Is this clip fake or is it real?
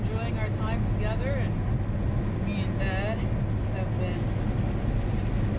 real